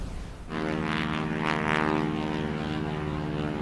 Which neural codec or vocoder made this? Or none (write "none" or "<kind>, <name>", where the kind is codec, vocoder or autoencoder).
none